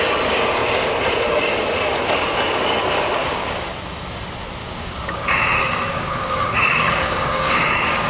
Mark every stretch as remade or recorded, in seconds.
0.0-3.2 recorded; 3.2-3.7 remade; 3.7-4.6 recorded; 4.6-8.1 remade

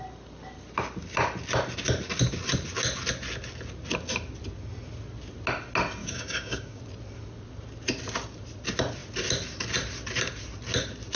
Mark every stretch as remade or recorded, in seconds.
0.0-6.0 recorded; 6.0-6.8 remade; 6.8-11.2 recorded

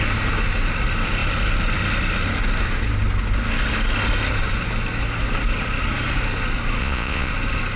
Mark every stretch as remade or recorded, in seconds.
0.0-6.8 recorded; 6.8-7.3 remade; 7.3-7.8 recorded

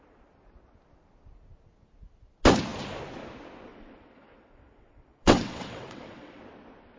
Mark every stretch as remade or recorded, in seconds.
0.0-3.7 recorded; 3.7-6.4 remade; 6.4-7.0 recorded

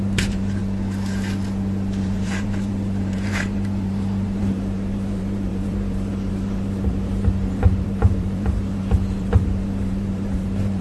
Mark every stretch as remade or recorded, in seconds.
0.0-0.6 remade; 0.6-2.0 recorded; 2.0-10.8 remade

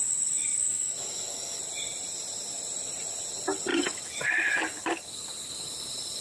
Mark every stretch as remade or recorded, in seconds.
0.0-0.7 recorded; 0.7-1.6 remade; 1.6-6.2 recorded

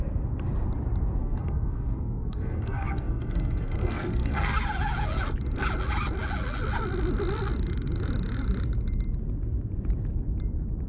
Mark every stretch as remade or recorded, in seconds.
0.0-1.2 recorded; 1.2-4.6 remade; 4.6-10.9 recorded